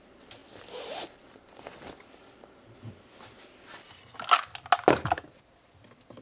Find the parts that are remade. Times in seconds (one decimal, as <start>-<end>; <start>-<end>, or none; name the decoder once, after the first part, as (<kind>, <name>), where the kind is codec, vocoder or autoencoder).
none